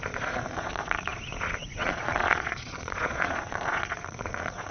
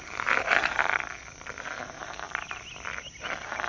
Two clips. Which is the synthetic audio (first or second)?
first